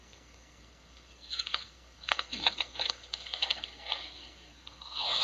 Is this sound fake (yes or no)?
yes